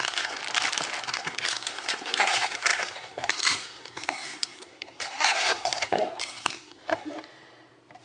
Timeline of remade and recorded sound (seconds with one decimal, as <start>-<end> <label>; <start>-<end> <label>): 0.0-0.4 remade; 0.4-1.0 recorded; 1.0-7.1 remade; 7.1-8.0 recorded